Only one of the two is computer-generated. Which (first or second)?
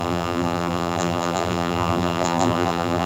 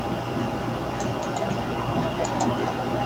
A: first